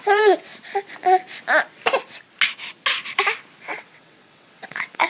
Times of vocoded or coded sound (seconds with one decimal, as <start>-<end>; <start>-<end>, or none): 0.0-0.5; 3.6-5.1